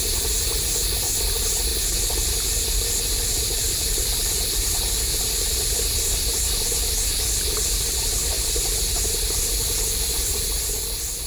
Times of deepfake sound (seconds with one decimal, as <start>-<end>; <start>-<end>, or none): 1.7-5.2